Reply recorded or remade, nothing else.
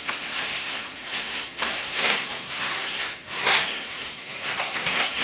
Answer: remade